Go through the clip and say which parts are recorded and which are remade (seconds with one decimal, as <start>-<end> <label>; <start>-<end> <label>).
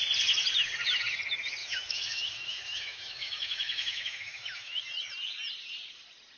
0.0-1.6 recorded; 1.6-4.8 remade; 4.8-6.4 recorded